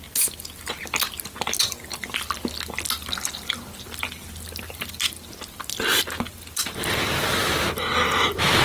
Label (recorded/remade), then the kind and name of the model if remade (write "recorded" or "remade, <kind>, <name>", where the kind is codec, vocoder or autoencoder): recorded